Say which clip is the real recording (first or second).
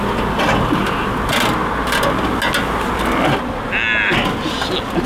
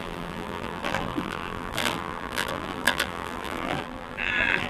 first